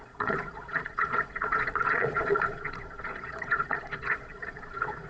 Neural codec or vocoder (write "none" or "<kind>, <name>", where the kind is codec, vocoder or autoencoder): vocoder, Vocos